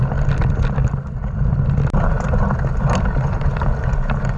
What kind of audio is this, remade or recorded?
recorded